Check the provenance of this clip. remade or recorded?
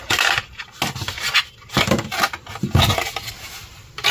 recorded